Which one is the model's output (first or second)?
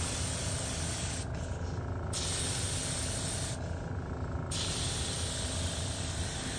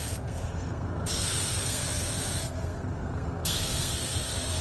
second